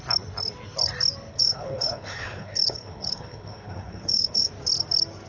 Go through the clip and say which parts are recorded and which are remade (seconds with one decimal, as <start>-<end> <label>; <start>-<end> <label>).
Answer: 0.0-1.3 recorded; 1.3-4.5 remade; 4.5-5.3 recorded